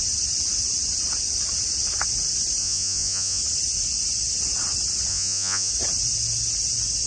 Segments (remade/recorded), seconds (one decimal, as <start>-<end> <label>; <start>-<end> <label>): 0.0-2.6 recorded; 2.6-3.4 remade; 3.4-5.1 recorded; 5.1-5.7 remade; 5.7-7.1 recorded